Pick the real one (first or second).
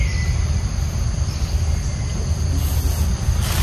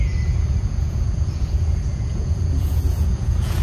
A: first